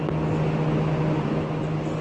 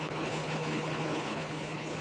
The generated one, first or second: second